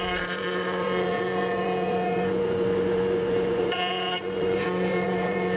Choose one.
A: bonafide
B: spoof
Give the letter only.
B